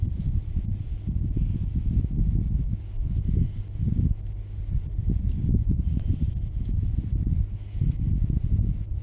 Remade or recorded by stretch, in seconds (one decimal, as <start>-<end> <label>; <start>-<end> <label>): 0.0-5.6 recorded; 5.6-6.3 remade; 6.3-9.0 recorded